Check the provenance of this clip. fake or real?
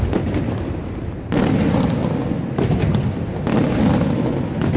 real